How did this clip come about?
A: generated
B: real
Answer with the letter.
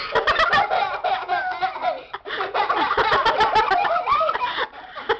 B